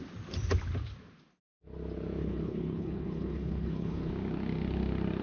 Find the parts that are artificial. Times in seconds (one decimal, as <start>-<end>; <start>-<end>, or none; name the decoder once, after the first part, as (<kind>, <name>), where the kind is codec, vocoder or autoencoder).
2.2-4.1 (codec, HILCodec)